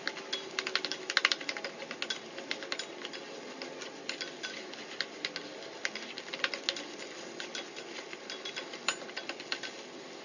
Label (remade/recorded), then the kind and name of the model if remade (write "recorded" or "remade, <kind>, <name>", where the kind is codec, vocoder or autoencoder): recorded